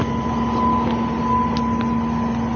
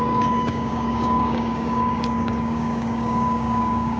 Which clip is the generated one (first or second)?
second